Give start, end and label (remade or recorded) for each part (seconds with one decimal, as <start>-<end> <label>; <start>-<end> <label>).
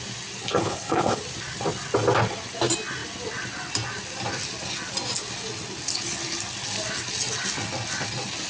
0.0-0.4 recorded; 0.4-1.2 remade; 1.2-8.5 recorded